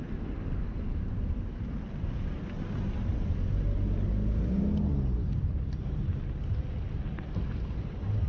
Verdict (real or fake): real